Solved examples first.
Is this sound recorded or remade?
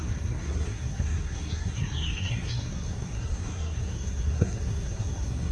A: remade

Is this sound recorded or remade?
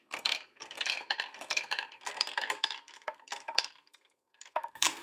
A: remade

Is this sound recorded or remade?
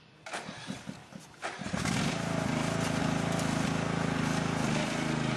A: recorded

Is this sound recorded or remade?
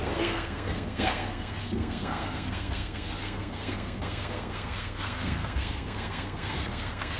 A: remade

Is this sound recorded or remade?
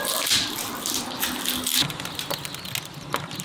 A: recorded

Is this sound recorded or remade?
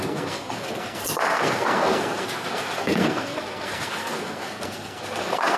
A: remade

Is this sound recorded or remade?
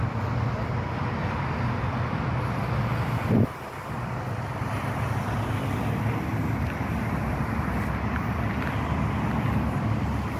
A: recorded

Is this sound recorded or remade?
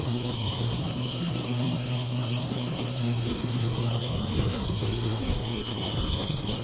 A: remade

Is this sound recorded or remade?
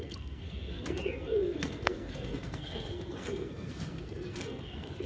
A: remade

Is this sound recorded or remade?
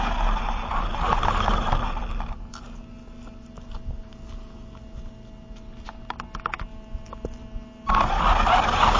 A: recorded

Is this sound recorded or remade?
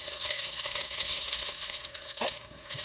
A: remade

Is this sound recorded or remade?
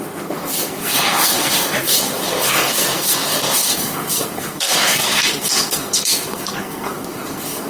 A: remade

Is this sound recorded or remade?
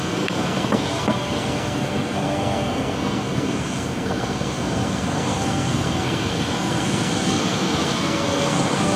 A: remade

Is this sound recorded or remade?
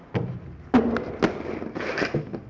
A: recorded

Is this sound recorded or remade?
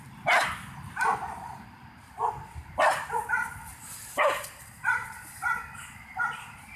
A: recorded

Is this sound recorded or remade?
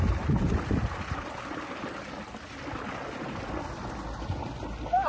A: recorded